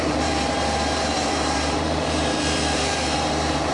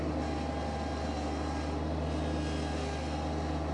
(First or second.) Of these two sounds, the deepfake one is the first